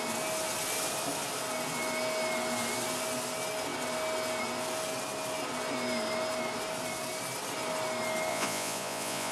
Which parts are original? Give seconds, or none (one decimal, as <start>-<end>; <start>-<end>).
0.0-8.3